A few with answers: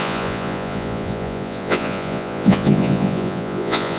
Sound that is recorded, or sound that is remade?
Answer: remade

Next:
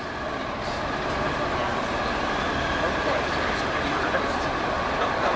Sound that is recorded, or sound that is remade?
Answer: recorded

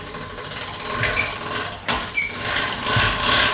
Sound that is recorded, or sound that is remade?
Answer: recorded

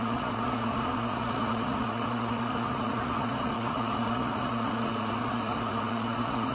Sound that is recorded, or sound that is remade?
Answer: remade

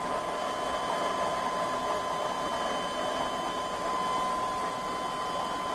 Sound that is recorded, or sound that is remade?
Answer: recorded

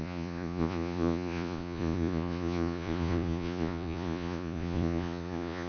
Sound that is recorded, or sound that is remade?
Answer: remade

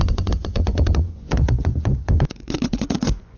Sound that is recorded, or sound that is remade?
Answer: remade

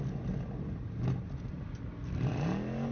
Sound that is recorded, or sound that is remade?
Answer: recorded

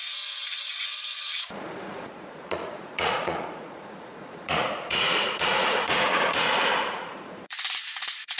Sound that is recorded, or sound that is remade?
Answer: remade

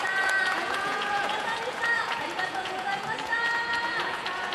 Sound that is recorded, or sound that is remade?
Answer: remade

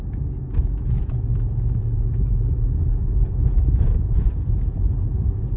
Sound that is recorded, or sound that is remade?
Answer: remade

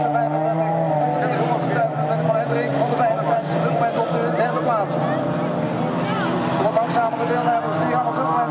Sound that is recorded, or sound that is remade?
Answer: recorded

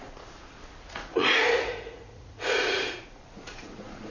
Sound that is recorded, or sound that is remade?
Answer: remade